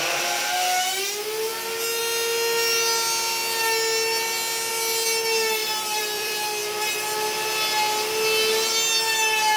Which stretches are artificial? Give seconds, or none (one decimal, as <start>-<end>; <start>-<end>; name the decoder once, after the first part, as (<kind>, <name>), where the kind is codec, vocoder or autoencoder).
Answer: 5.6-6.9 (vocoder, BigVGAN v2)